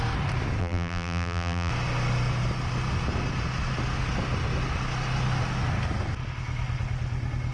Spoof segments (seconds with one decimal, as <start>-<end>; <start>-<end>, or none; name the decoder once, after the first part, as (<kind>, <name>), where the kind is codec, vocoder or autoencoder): 0.6-1.7 (vocoder, BigVGAN v2)